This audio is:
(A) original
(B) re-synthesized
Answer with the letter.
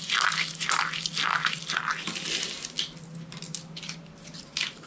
A